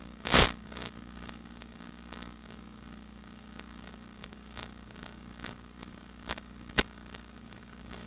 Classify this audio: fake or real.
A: fake